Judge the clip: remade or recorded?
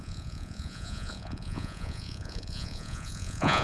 remade